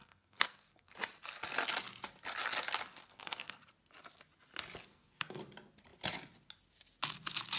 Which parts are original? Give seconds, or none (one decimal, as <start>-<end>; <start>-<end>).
0.9-3.0; 3.6-4.9; 5.4-7.6